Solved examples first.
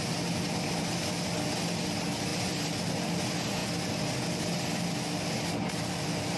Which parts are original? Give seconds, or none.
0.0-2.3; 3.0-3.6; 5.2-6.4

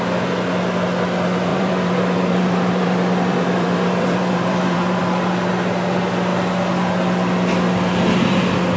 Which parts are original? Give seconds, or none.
0.0-1.5; 5.0-8.8

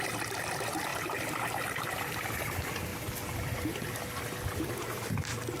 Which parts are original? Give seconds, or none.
0.0-0.9; 2.1-5.6